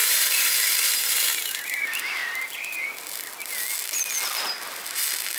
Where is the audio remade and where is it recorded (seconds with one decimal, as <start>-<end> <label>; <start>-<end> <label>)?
0.0-2.2 remade; 2.2-5.4 recorded